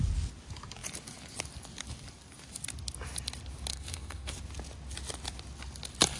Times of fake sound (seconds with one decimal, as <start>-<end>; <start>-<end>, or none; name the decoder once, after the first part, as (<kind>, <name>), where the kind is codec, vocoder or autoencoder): 3.7-4.3 (codec, SNAC)